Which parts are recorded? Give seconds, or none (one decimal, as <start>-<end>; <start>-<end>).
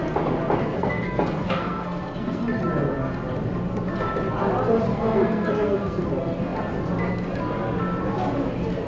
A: 0.0-0.6; 2.6-4.9; 6.1-8.9